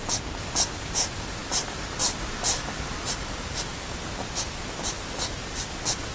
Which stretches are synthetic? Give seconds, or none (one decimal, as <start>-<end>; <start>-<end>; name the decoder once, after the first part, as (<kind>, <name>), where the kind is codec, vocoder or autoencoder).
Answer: none